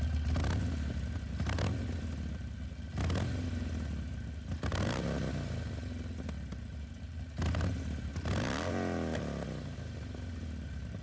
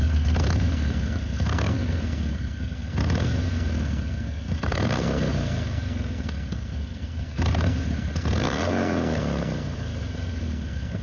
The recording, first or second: first